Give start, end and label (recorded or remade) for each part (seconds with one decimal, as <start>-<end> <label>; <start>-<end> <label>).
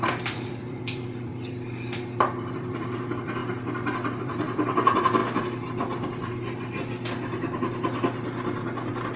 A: 0.0-1.3 remade; 1.3-2.5 recorded; 2.5-3.4 remade; 3.4-4.1 recorded; 4.1-5.2 remade; 5.2-9.2 recorded